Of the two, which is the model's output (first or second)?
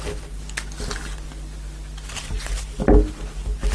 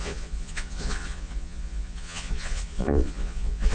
second